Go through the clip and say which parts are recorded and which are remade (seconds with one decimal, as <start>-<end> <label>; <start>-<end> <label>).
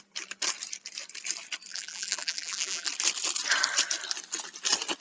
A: 0.0-1.7 recorded; 1.7-2.9 remade; 2.9-5.0 recorded